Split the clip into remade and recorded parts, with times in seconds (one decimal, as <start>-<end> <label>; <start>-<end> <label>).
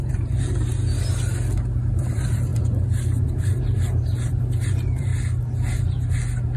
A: 0.0-0.7 remade; 0.7-1.9 recorded; 1.9-2.5 remade; 2.5-3.2 recorded; 3.2-5.1 remade; 5.1-6.6 recorded